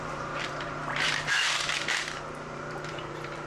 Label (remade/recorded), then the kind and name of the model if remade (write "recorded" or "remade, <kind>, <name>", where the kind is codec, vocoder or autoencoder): remade, vocoder, BigVGAN v2